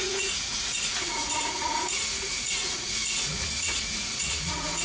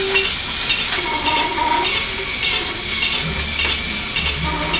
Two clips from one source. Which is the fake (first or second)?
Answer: first